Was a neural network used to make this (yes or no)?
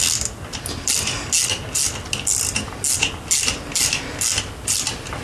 no